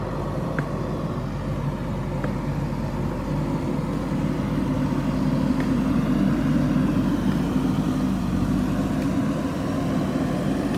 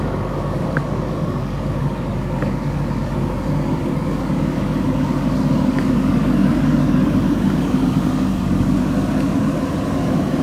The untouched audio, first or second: first